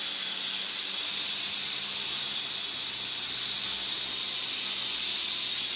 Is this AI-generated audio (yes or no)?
no